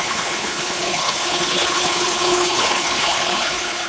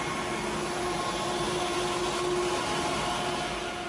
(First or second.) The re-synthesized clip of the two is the first